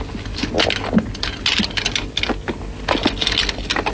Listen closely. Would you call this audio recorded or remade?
recorded